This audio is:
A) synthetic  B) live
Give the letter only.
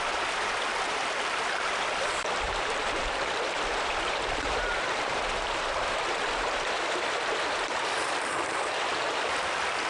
A